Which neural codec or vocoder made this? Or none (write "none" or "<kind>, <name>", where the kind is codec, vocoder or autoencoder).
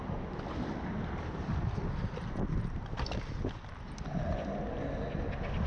none